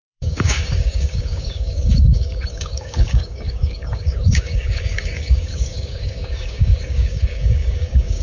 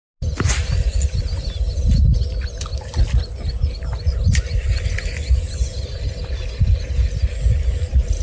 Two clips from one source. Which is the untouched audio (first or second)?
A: second